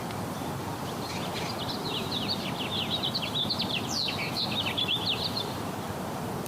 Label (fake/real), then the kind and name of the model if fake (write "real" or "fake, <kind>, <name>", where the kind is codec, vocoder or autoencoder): fake, vocoder, BigVGAN v2